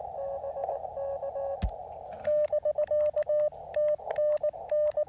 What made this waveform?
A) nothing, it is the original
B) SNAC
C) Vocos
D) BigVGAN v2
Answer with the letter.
A